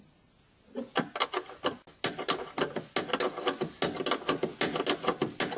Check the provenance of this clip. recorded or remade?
recorded